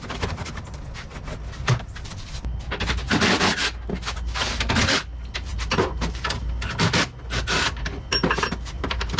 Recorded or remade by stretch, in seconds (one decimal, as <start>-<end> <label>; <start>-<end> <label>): 0.0-9.2 recorded